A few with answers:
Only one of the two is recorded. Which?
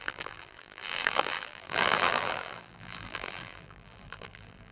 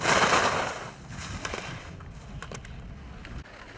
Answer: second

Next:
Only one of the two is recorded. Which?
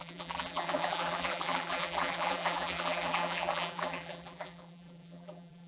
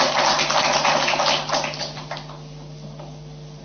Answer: second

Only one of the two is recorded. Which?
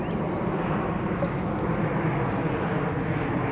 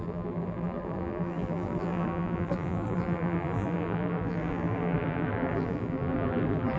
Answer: first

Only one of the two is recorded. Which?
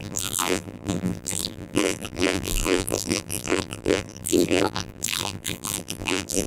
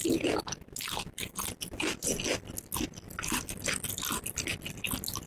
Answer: second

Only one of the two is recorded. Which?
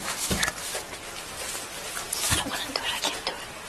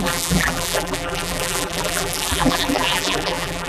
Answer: first